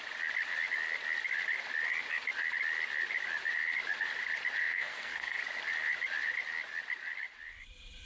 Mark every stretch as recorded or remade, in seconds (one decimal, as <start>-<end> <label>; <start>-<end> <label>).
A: 0.0-4.6 recorded; 4.6-5.4 remade; 5.4-8.1 recorded